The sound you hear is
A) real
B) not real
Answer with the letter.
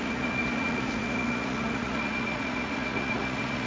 B